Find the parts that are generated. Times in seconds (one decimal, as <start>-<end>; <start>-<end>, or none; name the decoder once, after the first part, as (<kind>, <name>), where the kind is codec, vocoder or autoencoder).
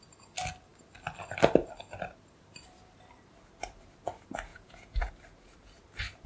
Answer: 4.5-5.1 (vocoder, Vocos)